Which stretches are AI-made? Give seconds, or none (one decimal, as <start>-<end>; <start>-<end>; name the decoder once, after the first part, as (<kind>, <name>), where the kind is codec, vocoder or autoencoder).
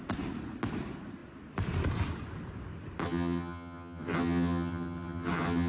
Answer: 3.0-5.7 (vocoder, HiFi-GAN)